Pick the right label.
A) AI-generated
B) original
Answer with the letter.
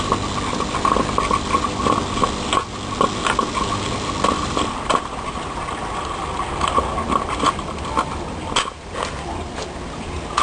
B